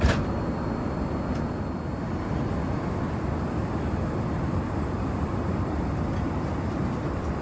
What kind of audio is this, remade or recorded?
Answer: remade